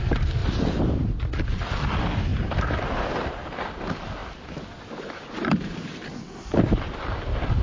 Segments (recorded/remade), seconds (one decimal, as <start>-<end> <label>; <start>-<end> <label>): 0.0-0.4 recorded; 0.4-1.4 remade; 1.4-2.3 recorded; 2.3-3.4 remade; 3.4-7.6 recorded